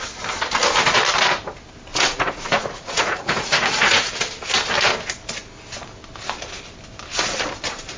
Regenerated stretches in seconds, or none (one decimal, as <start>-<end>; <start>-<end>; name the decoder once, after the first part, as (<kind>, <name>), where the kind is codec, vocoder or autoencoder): 1.9-4.1 (vocoder, Vocos)